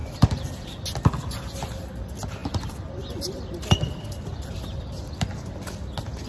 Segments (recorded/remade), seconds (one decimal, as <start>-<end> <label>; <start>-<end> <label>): 0.0-0.8 remade; 0.8-2.4 recorded; 2.4-4.8 remade; 4.8-6.3 recorded